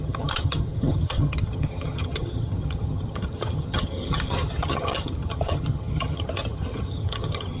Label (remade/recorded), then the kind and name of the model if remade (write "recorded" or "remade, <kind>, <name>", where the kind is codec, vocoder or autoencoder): remade, vocoder, HiFi-GAN